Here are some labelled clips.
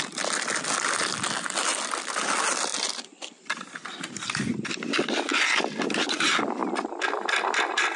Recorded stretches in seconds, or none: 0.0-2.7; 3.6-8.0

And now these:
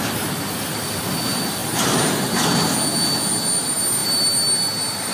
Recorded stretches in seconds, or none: 0.0-5.1

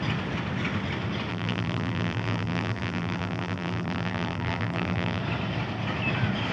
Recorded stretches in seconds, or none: 0.0-1.3; 5.2-6.5

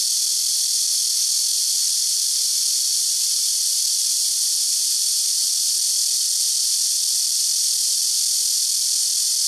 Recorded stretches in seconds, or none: 0.0-1.5; 5.5-9.5

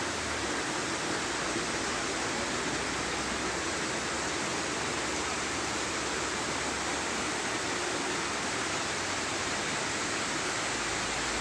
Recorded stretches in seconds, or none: 0.0-4.5; 7.2-11.4

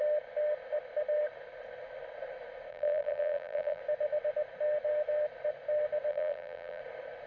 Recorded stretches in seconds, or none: 0.0-2.7; 3.8-6.1; 6.8-7.3

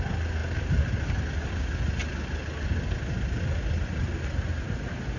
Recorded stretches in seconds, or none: 0.0-5.2

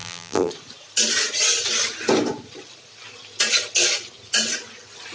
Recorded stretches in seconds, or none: 0.5-5.1